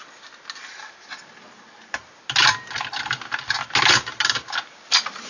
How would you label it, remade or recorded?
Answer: recorded